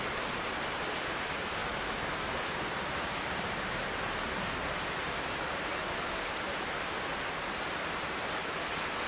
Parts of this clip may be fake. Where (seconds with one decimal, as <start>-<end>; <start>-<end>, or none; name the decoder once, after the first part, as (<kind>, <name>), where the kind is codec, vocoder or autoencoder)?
none